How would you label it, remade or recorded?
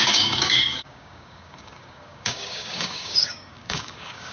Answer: remade